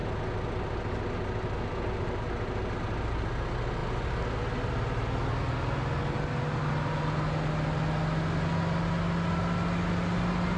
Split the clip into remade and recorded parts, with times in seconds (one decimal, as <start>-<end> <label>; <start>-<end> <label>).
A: 0.0-10.6 recorded

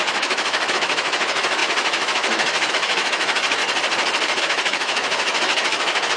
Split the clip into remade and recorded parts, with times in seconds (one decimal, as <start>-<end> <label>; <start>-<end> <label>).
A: 0.0-3.6 remade; 3.6-4.4 recorded; 4.4-6.2 remade

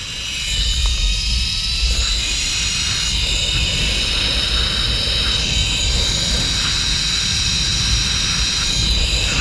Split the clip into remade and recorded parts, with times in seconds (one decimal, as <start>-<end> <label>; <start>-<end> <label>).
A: 0.0-9.4 recorded

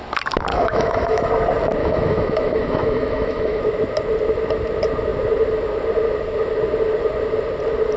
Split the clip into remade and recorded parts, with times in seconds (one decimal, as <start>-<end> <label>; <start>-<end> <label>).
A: 0.0-0.5 recorded; 0.5-1.3 remade; 1.3-1.8 recorded; 1.8-3.6 remade; 3.6-8.0 recorded